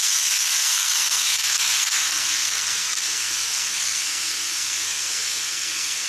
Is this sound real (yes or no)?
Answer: no